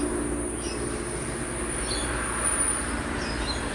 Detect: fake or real real